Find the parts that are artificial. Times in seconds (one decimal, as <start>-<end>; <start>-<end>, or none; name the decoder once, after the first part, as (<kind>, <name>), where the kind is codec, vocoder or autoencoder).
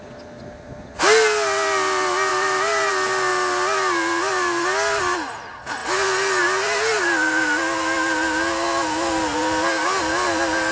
2.3-2.9 (vocoder, BigVGAN v2)